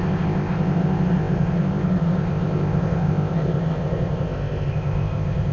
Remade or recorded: remade